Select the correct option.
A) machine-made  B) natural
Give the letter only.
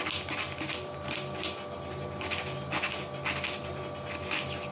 B